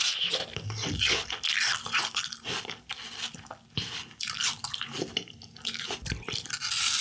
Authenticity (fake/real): real